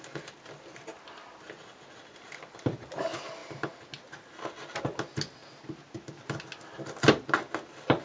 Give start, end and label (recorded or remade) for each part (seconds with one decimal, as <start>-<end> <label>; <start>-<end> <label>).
0.0-8.0 recorded